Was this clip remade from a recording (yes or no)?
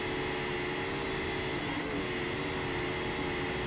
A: no